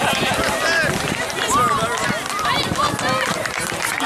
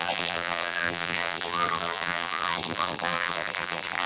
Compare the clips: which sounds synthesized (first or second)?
second